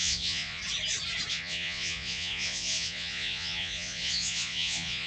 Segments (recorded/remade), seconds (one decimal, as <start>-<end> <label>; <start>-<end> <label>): 0.0-0.6 remade; 0.6-1.3 recorded; 1.3-5.1 remade